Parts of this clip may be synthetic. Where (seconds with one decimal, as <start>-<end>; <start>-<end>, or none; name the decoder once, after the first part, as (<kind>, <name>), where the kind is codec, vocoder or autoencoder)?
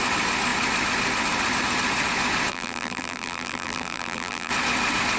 2.5-4.5 (vocoder, BigVGAN v2)